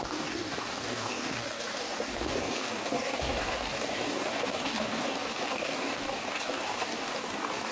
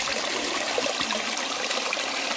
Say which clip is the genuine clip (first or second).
second